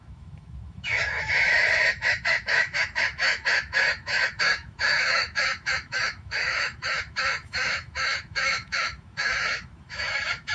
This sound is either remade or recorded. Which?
remade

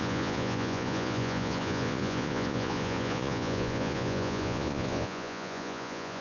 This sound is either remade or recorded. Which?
remade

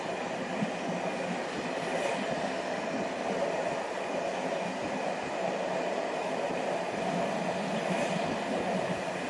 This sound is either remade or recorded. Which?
recorded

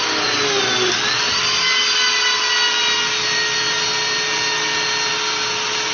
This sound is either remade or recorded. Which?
recorded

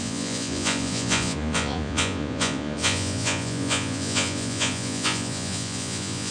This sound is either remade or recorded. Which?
remade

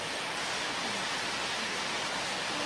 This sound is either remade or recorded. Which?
recorded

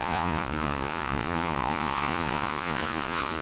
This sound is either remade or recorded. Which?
remade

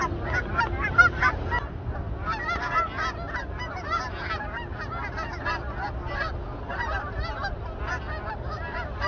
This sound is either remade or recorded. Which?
recorded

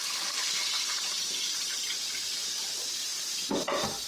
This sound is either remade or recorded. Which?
remade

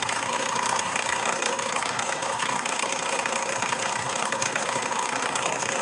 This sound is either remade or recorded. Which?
remade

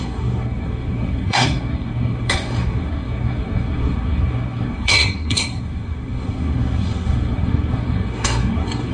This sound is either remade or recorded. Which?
remade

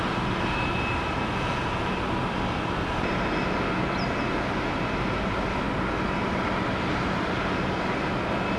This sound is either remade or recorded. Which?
recorded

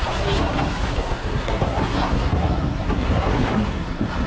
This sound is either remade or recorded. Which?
remade